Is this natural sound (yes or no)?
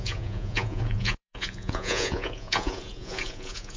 no